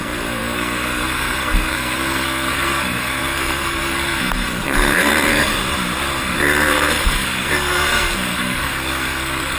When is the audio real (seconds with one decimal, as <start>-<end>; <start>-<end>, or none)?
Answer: 5.6-6.2